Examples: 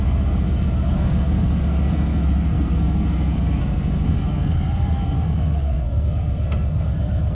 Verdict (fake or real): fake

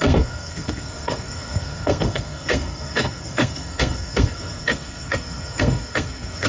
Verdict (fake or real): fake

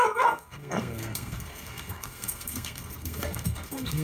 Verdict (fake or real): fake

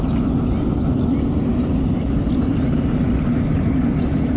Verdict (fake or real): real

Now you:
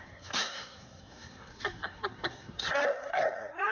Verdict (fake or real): fake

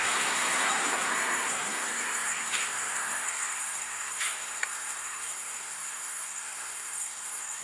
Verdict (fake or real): fake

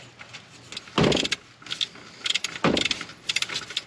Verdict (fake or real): real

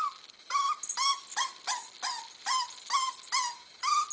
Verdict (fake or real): real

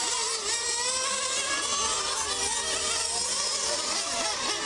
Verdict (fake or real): real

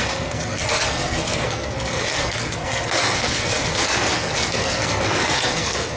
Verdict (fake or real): fake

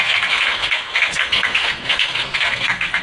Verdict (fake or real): fake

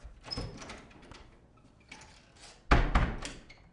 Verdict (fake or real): real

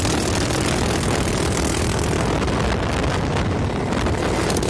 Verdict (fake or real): real